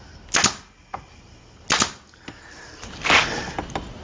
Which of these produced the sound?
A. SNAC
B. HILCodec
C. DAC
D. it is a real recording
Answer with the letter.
D